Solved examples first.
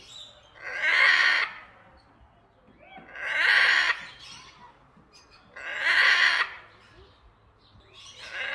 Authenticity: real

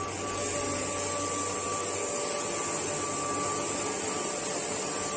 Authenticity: real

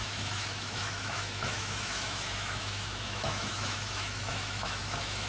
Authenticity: fake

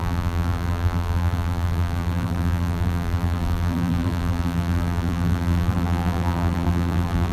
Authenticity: fake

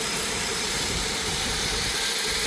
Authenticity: fake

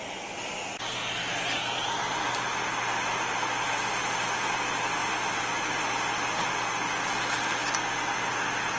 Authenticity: real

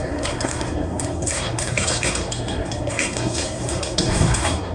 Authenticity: fake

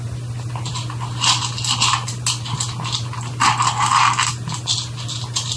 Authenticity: real